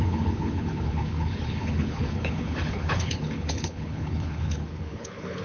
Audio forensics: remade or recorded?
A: remade